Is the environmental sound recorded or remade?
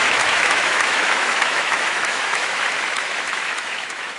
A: remade